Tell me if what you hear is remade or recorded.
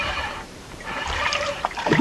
remade